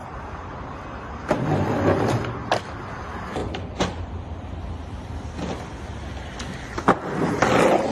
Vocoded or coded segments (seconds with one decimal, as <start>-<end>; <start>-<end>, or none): none

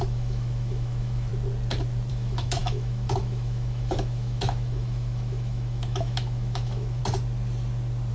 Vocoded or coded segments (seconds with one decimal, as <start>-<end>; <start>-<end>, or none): 0.0-1.3; 2.1-7.0

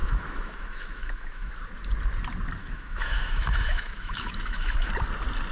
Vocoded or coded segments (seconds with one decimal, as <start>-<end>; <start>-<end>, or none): 0.0-1.5; 2.6-4.9

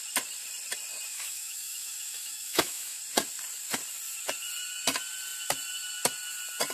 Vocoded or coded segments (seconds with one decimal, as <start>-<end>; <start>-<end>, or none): 1.1-3.0

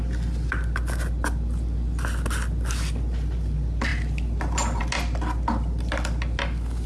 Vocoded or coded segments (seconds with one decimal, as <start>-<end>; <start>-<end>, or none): none